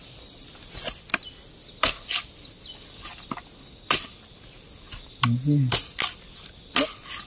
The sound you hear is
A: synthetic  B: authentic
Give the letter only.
B